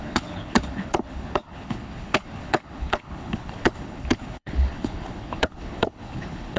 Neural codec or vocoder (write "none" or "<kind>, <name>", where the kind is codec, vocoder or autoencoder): codec, HILCodec